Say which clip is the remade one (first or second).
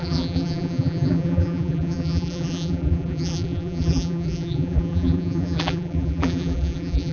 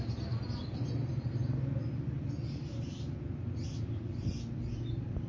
first